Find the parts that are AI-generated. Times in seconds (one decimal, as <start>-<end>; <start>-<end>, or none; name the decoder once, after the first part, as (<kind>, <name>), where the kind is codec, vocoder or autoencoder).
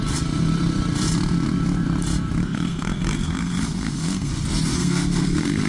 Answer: 2.4-4.3 (codec, SNAC); 4.8-5.7